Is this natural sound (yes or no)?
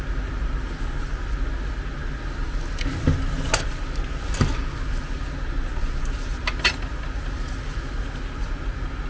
yes